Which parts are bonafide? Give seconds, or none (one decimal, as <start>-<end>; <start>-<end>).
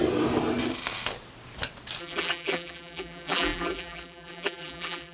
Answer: 0.0-2.0